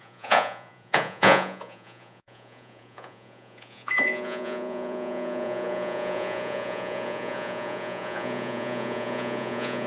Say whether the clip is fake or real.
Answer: fake